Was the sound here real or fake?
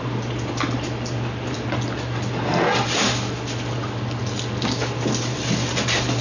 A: real